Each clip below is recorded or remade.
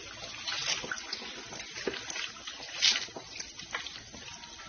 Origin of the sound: recorded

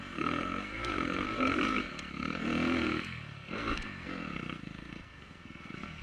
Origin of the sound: remade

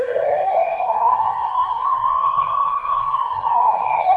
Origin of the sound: remade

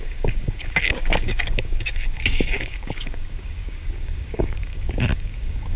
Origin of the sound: remade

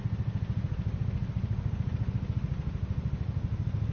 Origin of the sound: recorded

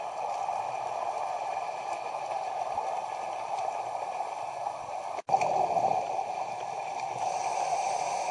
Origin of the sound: remade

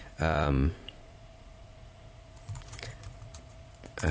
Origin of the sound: remade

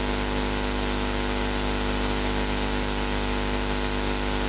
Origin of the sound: recorded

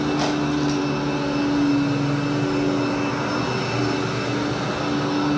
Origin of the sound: recorded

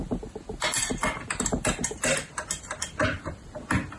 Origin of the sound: recorded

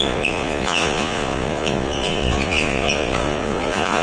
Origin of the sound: remade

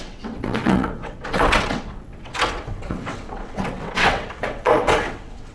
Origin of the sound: remade